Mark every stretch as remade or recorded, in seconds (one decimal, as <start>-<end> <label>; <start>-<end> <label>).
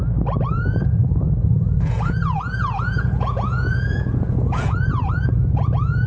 0.0-0.5 recorded; 0.5-6.1 remade